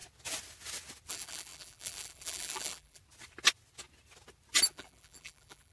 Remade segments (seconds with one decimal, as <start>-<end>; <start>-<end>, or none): 1.1-3.0; 4.7-5.7

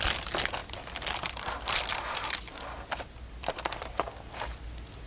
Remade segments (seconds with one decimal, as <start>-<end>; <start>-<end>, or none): none

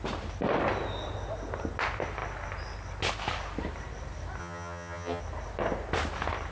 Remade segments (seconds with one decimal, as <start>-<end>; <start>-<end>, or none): 4.4-5.2

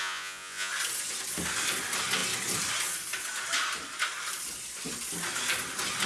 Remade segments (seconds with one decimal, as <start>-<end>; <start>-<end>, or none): 0.0-0.7

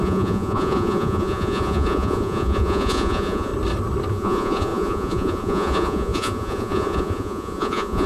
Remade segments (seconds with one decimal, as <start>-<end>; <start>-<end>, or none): 0.0-3.5; 4.1-8.1

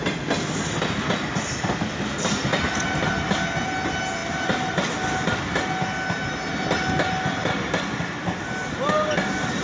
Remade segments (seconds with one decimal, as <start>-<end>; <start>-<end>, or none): none